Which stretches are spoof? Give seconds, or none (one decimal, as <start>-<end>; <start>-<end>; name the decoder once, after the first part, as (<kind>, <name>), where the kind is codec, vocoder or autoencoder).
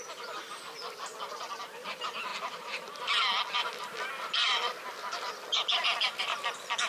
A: 2.3-3.0 (vocoder, BigVGAN v2); 3.6-5.3